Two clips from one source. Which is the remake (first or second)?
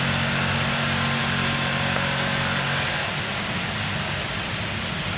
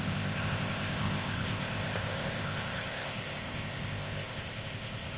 second